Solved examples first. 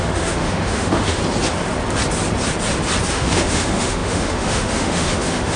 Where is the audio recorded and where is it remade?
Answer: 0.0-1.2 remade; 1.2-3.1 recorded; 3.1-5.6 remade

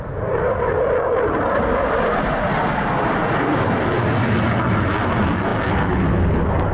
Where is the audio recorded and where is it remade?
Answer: 0.0-6.7 recorded

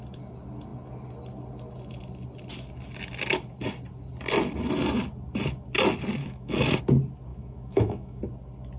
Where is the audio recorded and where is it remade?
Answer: 0.0-6.2 recorded; 6.2-6.8 remade; 6.8-7.3 recorded; 7.3-8.2 remade; 8.2-8.8 recorded

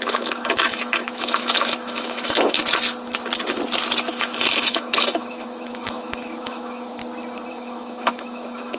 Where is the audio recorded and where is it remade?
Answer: 0.0-2.6 remade; 2.6-4.1 recorded; 4.1-7.0 remade; 7.0-7.5 recorded; 7.5-8.8 remade